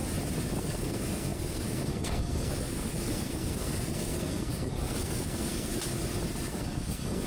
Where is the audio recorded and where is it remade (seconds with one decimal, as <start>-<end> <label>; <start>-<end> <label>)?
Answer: 0.0-0.6 recorded; 0.6-5.7 remade; 5.7-6.5 recorded; 6.5-7.3 remade